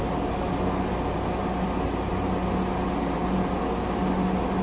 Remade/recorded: recorded